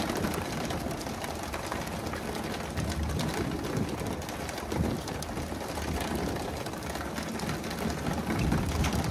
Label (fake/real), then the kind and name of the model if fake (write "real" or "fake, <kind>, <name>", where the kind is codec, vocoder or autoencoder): real